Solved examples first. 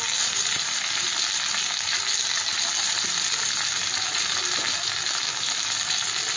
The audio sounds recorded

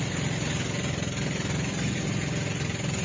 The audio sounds recorded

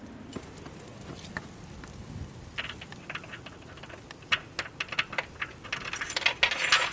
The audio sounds recorded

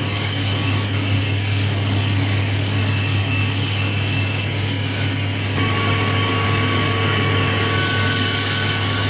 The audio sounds remade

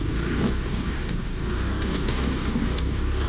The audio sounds remade